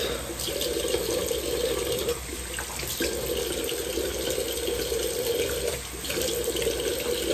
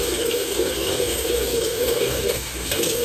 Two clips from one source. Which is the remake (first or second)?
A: second